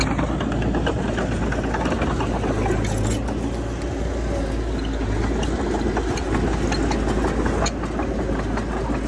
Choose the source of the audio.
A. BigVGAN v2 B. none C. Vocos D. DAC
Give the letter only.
B